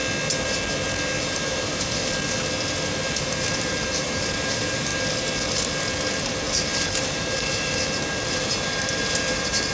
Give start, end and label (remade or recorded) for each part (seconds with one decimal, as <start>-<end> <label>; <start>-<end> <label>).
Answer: 0.0-1.2 recorded; 1.2-2.0 remade; 2.0-3.3 recorded; 3.3-4.9 remade; 4.9-6.1 recorded; 6.1-9.7 remade